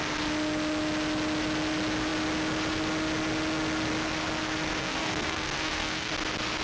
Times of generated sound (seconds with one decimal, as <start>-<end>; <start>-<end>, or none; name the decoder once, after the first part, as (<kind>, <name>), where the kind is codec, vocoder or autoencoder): 4.8-6.1 (codec, SNAC)